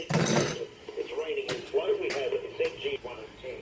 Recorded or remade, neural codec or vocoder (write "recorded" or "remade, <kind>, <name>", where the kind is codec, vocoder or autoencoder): recorded